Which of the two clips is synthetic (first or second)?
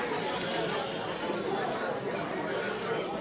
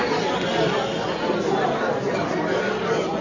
first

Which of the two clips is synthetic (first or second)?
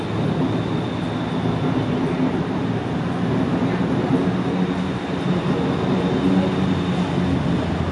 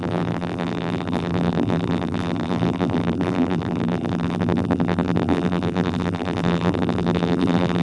second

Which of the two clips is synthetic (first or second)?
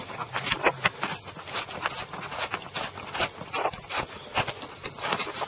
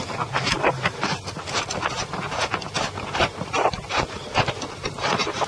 second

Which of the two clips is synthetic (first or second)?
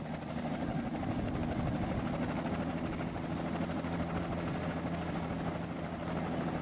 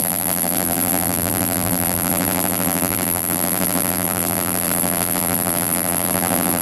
second